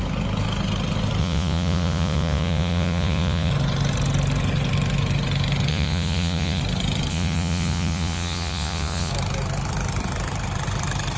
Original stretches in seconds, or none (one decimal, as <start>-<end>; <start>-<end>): 0.0-1.2; 3.5-5.7; 6.6-7.1; 9.1-11.2